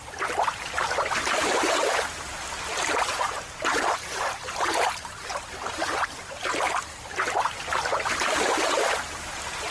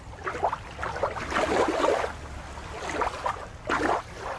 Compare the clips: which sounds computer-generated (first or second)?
first